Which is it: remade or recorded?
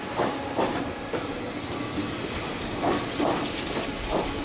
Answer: recorded